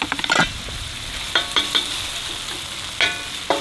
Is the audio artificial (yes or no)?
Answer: no